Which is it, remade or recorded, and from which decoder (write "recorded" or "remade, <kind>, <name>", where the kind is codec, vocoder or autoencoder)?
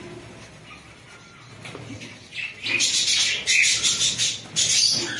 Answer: recorded